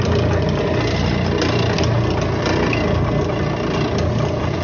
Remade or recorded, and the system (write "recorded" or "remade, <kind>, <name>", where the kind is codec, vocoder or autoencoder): recorded